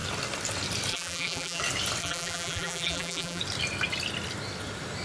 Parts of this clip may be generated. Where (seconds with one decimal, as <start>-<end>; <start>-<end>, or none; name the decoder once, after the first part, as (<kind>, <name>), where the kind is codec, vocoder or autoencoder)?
0.9-1.6 (vocoder, BigVGAN v2); 2.0-3.4